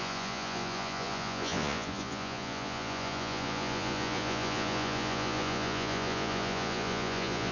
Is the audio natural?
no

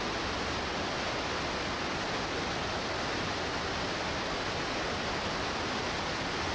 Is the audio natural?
yes